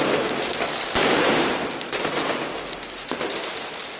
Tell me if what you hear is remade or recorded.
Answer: recorded